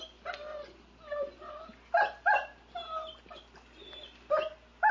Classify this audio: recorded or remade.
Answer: recorded